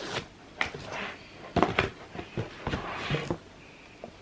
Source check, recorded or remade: recorded